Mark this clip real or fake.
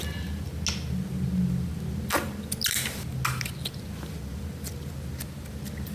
real